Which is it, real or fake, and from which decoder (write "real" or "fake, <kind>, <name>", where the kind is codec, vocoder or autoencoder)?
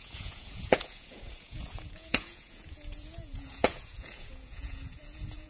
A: fake, vocoder, Vocos